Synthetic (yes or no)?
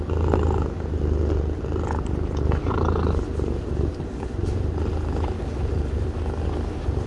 no